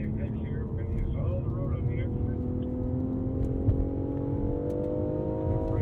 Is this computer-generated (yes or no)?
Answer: no